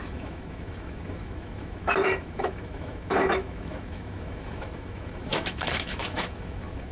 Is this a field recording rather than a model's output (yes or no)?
no